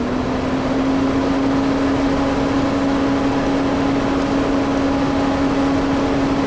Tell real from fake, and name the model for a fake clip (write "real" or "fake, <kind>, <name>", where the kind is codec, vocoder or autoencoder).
real